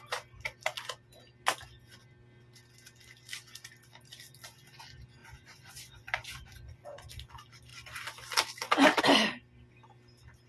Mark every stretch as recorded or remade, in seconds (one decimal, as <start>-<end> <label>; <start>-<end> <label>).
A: 0.0-5.2 recorded; 5.2-7.1 remade; 7.1-10.5 recorded